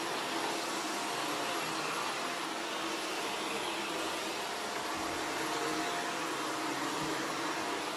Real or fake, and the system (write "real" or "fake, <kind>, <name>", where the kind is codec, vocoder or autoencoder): real